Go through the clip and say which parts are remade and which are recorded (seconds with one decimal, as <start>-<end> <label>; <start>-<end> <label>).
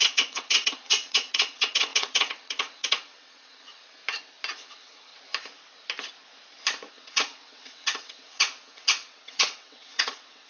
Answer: 0.0-4.0 remade; 4.0-4.6 recorded; 4.6-5.1 remade; 5.1-6.9 recorded; 6.9-10.5 remade